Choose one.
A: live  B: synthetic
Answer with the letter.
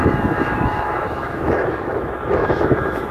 B